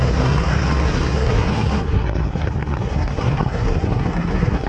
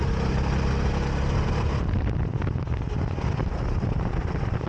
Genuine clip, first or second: second